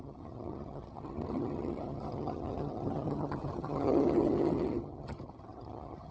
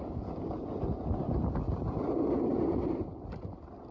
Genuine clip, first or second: second